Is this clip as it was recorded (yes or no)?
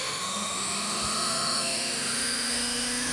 no